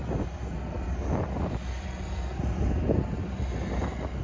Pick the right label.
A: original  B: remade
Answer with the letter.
A